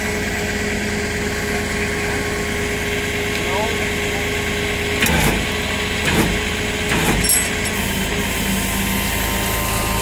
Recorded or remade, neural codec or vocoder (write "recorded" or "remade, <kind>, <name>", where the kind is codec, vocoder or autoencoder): recorded